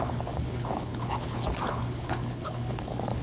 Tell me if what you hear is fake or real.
fake